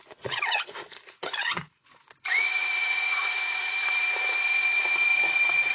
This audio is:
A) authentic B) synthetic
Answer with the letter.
B